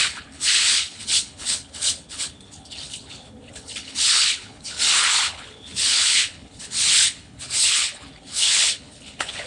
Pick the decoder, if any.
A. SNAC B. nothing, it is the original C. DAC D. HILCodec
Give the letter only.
D